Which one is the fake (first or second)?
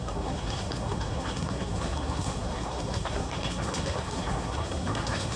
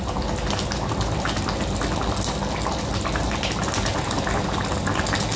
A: first